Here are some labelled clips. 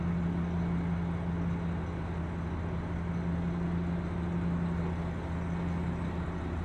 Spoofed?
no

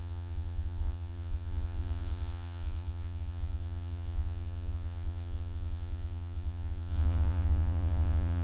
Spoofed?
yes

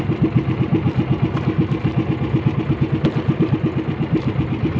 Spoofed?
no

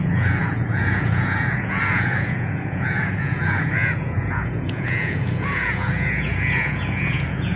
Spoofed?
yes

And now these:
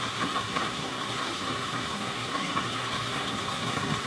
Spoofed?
yes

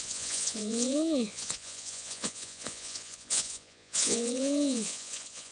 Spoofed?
yes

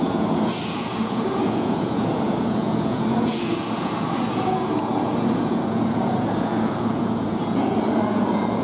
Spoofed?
yes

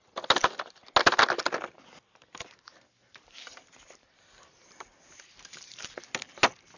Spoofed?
no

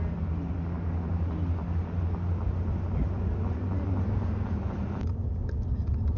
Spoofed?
no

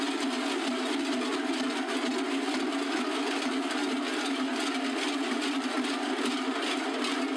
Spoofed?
no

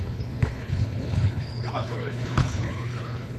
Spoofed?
yes